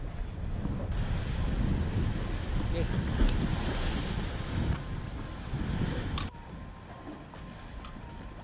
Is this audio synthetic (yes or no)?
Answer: no